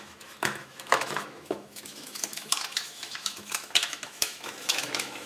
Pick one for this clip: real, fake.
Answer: fake